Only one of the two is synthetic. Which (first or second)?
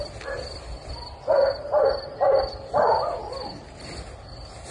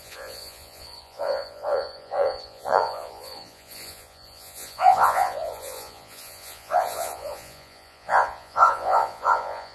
second